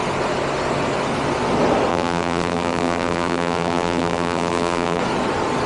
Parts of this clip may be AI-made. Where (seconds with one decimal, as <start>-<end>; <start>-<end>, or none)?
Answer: 1.9-5.0